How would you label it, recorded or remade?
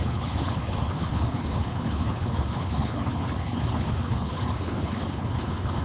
remade